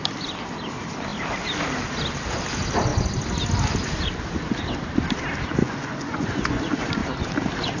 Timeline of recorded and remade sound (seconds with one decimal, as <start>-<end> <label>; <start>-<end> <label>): 0.0-5.6 recorded; 5.6-6.6 remade; 6.6-7.8 recorded